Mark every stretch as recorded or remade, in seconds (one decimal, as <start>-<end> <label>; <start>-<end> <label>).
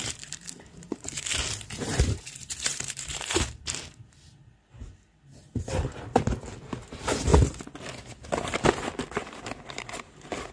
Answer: 0.0-5.3 remade; 5.3-6.7 recorded; 6.7-7.3 remade; 7.3-10.5 recorded